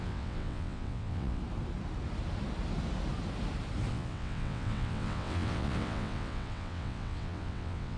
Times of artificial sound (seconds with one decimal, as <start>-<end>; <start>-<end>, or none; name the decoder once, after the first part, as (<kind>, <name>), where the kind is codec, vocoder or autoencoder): 0.0-1.4 (vocoder, WaveNeXt); 3.9-8.0